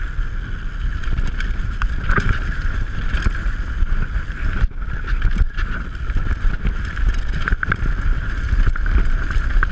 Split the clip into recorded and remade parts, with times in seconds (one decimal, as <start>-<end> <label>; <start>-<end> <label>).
0.0-9.7 recorded